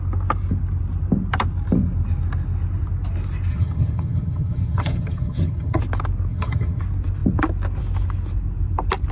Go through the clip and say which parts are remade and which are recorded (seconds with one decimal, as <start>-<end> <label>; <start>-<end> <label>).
0.0-3.5 recorded; 3.5-5.8 remade; 5.8-6.3 recorded; 6.3-6.8 remade; 6.8-9.1 recorded